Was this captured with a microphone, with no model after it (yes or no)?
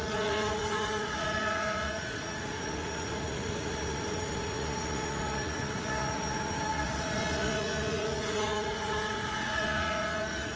no